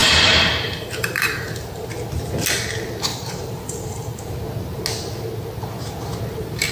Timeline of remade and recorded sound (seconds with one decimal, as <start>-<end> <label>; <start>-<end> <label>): 0.0-1.9 remade; 1.9-3.1 recorded; 3.1-4.2 remade; 4.2-6.7 recorded